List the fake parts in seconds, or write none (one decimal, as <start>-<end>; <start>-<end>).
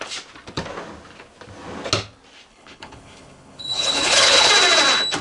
2.5-4.5